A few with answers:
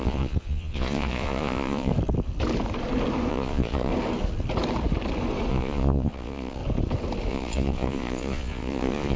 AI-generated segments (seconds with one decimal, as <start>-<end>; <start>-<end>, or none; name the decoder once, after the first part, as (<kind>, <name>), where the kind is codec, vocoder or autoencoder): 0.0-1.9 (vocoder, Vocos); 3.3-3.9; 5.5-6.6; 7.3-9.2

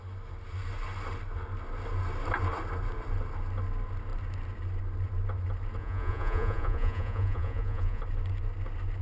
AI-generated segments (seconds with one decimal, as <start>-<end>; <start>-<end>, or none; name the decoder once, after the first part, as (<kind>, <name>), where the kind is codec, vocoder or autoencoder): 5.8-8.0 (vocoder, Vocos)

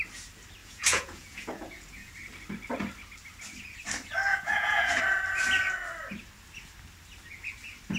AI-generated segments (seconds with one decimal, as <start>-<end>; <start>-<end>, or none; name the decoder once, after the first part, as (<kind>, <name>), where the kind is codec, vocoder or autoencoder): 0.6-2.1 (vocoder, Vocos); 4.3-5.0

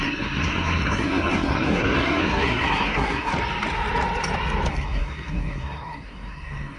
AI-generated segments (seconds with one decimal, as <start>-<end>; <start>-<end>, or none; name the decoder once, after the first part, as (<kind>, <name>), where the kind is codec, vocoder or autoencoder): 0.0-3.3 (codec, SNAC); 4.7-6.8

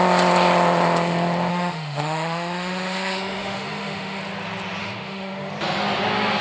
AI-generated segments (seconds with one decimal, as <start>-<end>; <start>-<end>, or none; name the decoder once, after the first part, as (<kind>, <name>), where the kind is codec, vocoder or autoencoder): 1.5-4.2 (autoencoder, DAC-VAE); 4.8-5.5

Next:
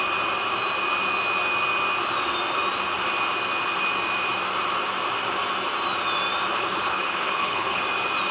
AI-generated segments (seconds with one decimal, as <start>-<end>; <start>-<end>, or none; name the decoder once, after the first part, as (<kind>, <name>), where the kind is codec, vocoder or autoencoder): 6.5-7.8 (codec, HILCodec)